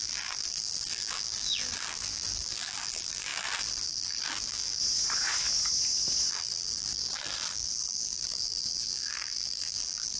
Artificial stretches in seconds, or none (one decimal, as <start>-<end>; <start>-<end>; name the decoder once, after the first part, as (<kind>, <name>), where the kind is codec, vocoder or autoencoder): 0.0-4.8 (vocoder, BigVGAN v2); 6.3-10.2